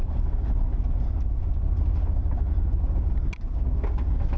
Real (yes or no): yes